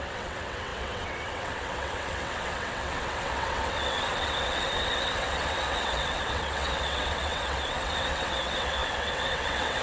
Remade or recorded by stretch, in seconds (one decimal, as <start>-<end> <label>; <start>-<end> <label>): 0.0-9.8 remade